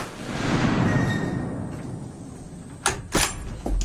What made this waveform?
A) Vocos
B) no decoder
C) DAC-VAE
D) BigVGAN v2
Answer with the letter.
B